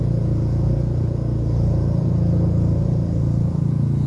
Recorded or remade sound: remade